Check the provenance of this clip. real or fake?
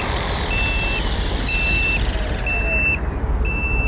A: real